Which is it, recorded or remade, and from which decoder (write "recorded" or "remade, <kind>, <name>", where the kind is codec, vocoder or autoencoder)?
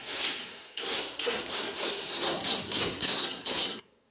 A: remade, codec, SNAC